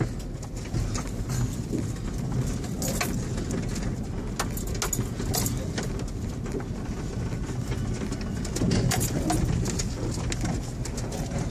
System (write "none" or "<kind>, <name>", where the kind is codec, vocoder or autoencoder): none